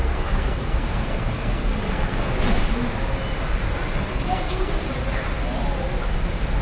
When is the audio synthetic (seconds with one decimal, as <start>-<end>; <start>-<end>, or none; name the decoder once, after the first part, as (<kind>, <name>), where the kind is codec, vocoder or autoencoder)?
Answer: 0.0-2.3 (codec, SNAC); 3.9-4.7